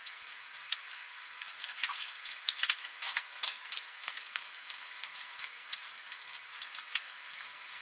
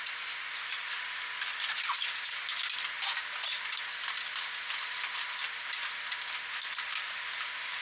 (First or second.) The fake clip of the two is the first